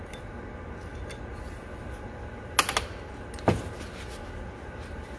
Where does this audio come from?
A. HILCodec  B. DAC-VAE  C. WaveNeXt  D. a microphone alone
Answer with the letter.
D